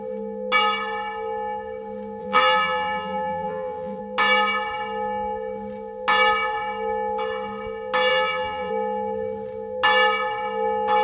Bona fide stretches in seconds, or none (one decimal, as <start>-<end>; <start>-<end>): 0.0-2.2; 4.0-8.1; 8.7-11.0